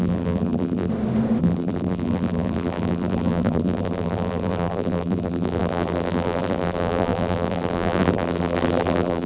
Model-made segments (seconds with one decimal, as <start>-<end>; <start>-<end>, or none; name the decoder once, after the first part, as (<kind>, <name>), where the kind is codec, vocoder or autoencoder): 0.0-0.9 (vocoder, BigVGAN v2); 1.4-9.3